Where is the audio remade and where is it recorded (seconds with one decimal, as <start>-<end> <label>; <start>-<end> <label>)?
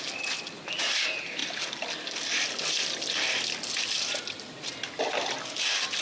0.0-6.0 recorded